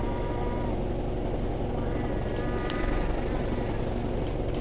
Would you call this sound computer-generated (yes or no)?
no